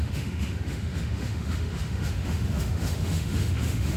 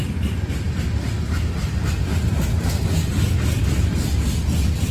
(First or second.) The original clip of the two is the second